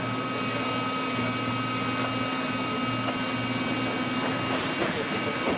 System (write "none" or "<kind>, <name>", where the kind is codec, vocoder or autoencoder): none